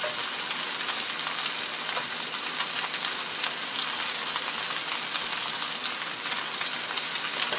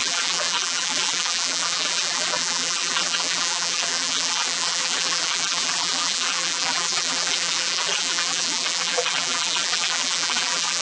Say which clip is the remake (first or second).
second